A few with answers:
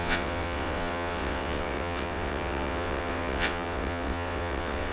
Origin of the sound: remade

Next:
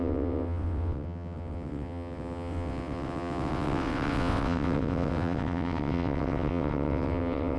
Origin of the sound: remade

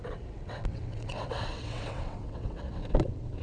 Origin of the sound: remade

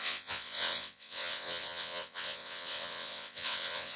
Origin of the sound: remade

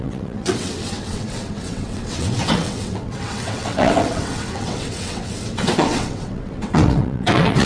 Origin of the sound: remade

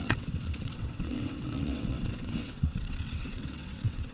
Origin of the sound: remade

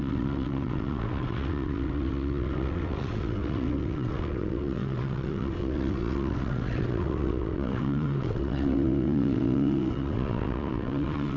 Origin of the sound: remade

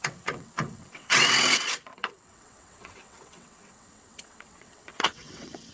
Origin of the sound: remade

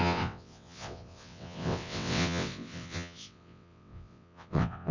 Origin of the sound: remade